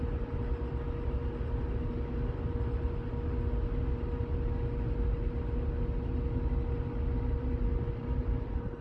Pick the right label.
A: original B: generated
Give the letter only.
A